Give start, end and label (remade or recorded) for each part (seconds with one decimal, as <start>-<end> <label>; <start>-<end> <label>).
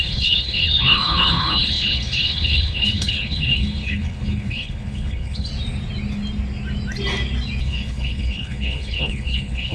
0.0-5.5 remade; 5.5-7.6 recorded; 7.6-9.7 remade